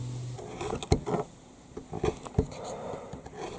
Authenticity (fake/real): real